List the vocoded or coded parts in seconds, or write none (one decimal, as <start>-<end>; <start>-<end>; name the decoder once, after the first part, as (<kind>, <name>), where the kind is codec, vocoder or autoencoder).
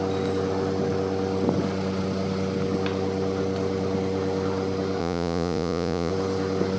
5.0-6.1 (vocoder, Vocos)